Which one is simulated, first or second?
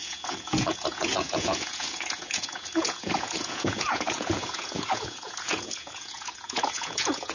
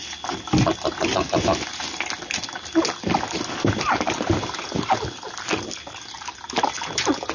first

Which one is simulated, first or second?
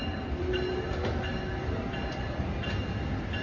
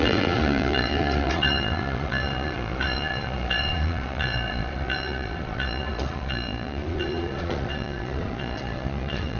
second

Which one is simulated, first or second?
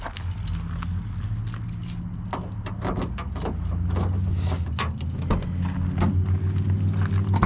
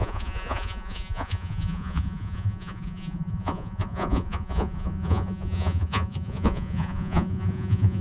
second